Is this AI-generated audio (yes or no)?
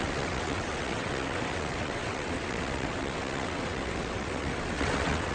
yes